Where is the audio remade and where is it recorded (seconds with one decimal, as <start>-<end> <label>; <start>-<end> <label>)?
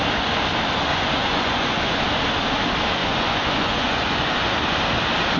0.0-0.9 recorded; 0.9-2.0 remade; 2.0-3.0 recorded; 3.0-4.8 remade; 4.8-5.4 recorded